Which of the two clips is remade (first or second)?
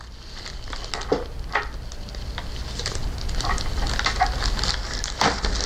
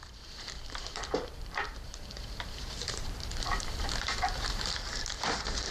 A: second